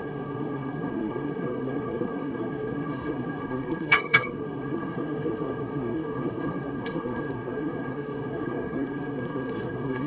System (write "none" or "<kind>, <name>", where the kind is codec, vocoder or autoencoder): codec, SNAC